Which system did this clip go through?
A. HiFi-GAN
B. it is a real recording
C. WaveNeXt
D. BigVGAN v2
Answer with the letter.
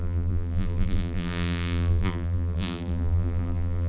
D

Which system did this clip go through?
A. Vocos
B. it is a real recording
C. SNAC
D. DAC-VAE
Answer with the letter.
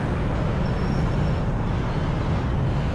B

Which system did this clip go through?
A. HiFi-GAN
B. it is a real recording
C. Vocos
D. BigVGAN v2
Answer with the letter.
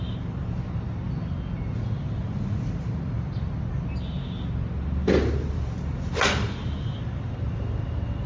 B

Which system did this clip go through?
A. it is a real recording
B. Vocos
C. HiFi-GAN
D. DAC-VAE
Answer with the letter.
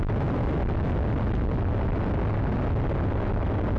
A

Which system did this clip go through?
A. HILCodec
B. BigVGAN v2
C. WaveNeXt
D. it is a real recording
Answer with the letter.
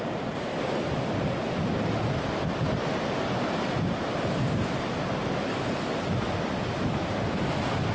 D